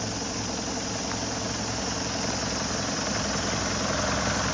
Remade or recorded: recorded